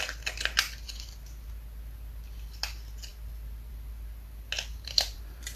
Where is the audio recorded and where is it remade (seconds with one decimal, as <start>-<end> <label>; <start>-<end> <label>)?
0.0-4.7 recorded; 4.7-5.6 remade